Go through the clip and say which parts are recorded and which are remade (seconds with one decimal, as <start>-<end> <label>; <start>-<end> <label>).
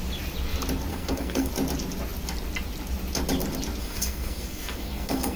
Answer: 0.0-0.9 recorded; 0.9-1.5 remade; 1.5-3.8 recorded; 3.8-5.4 remade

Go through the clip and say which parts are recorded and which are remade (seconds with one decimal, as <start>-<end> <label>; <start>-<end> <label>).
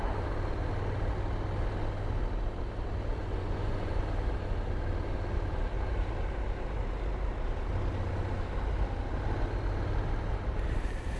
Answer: 0.0-3.2 recorded; 3.2-4.0 remade; 4.0-11.2 recorded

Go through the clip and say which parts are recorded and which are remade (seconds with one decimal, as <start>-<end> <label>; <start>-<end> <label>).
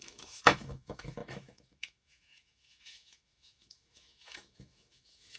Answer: 0.0-5.4 remade